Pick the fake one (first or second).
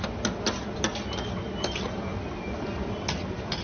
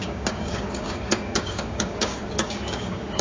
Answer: second